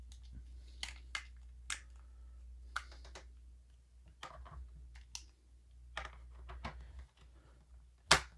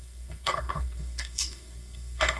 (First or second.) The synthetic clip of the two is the second